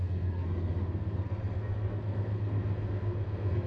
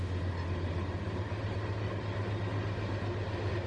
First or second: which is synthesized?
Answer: first